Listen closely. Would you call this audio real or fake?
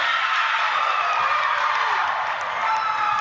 real